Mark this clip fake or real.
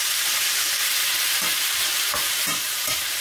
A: fake